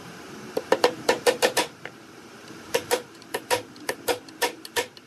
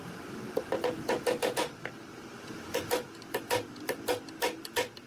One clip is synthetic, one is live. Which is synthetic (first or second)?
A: first